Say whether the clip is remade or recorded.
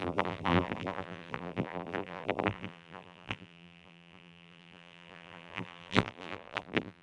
remade